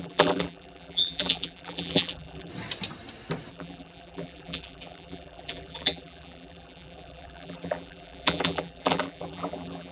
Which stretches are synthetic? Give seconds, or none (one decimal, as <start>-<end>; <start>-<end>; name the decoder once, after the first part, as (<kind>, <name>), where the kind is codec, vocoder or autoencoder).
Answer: 0.0-2.5 (vocoder, BigVGAN v2); 3.5-9.9